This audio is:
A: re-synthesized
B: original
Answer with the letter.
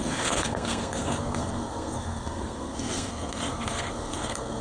A